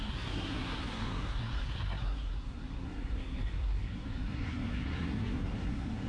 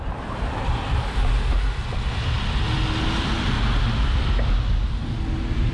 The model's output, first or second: first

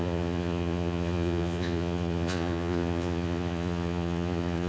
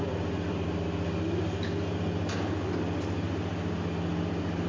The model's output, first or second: first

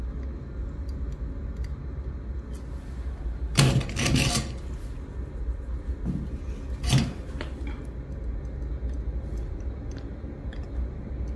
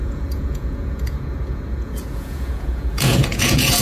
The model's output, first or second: second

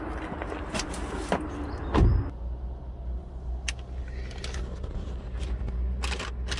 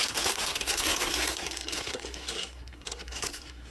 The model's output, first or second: second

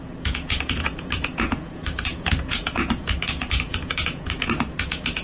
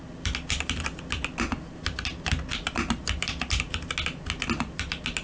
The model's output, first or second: first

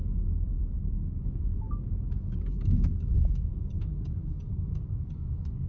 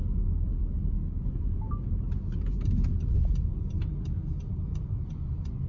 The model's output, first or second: first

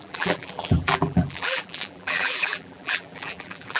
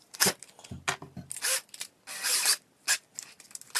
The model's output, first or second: first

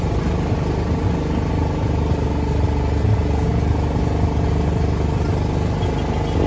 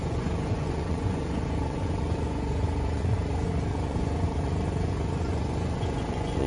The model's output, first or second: second